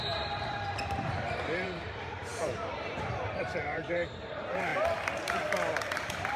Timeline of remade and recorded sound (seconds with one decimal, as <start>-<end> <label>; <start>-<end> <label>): 0.0-4.7 remade; 4.7-5.8 recorded; 5.8-6.4 remade